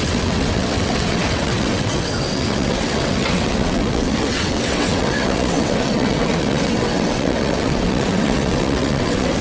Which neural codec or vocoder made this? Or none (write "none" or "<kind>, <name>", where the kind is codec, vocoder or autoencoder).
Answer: vocoder, WaveNeXt